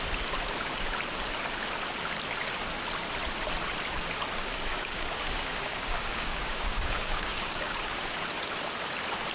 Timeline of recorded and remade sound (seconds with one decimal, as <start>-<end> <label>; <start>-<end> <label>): 0.0-4.7 recorded; 4.7-8.0 remade; 8.0-9.3 recorded